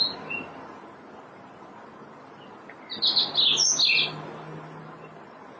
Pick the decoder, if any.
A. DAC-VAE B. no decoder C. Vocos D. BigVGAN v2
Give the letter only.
B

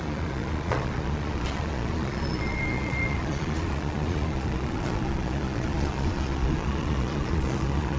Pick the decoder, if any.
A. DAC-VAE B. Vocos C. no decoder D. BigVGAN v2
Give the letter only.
B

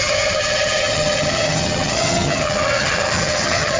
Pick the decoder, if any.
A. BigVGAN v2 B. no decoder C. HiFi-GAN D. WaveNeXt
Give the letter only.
C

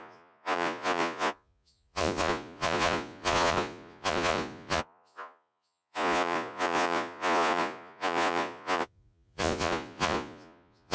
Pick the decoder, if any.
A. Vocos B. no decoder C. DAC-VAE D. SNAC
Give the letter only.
A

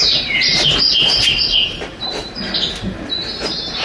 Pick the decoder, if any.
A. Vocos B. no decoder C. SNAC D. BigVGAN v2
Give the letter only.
D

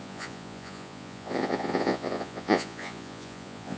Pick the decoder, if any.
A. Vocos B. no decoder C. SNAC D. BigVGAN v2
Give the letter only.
A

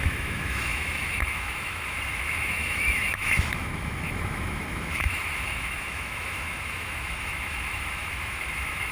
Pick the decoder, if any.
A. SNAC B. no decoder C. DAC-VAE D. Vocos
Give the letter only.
C